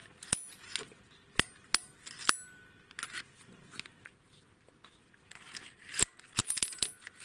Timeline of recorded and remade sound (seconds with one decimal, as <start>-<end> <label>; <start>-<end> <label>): 0.0-7.2 recorded